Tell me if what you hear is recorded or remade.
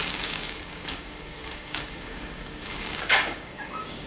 remade